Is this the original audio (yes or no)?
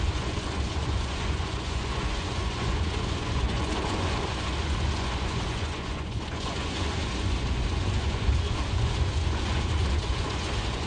no